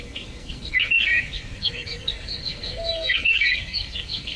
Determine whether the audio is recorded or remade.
remade